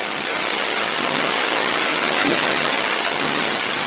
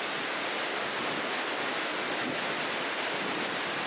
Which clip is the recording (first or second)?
second